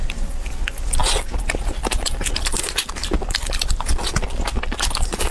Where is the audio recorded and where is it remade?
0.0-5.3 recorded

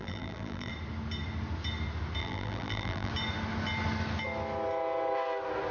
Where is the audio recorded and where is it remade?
0.0-0.7 remade; 0.7-2.2 recorded; 2.2-3.1 remade; 3.1-5.7 recorded